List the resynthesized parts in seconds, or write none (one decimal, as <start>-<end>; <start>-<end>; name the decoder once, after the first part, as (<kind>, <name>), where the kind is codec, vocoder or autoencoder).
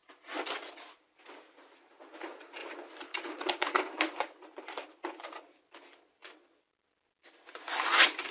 2.6-5.4 (vocoder, BigVGAN v2)